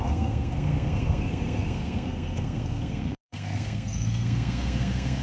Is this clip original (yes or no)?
no